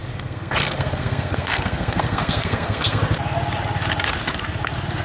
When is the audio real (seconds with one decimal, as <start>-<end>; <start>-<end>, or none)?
3.0-5.0